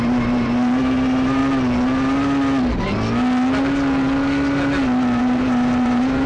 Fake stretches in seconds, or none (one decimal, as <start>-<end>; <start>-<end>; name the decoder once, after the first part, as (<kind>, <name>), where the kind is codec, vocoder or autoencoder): 0.0-1.4 (vocoder, BigVGAN v2); 5.2-6.3